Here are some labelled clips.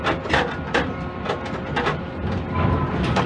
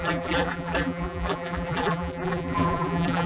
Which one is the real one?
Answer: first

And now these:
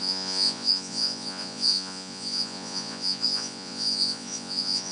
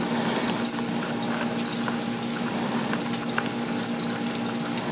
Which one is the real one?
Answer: second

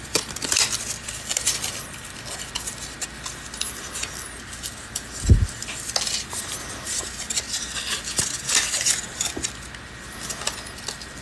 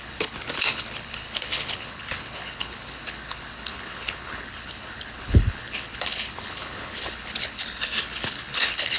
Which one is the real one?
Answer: first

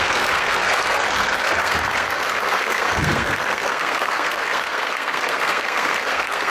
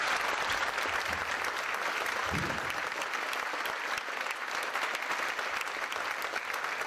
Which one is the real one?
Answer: second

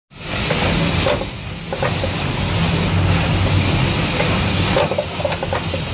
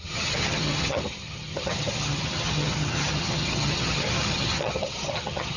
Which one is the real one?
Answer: first